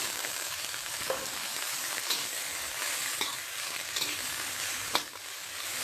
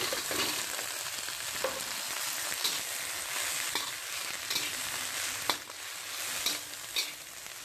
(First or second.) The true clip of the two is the second